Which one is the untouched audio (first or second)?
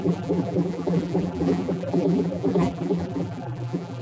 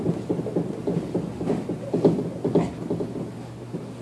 second